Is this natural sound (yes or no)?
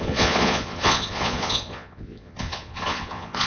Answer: no